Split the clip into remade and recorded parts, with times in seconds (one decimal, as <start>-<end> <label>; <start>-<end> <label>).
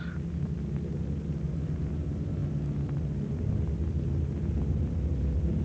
0.0-5.6 recorded